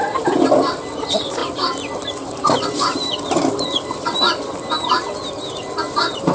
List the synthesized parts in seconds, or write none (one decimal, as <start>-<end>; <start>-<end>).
1.4-4.2